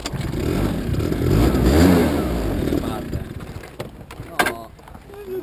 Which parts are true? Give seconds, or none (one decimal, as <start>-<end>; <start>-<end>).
0.0-5.4